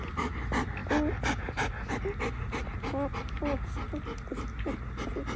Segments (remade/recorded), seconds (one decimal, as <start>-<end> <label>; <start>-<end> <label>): 0.0-5.4 recorded